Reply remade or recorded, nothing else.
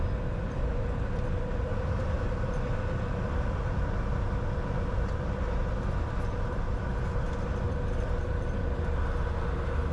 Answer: recorded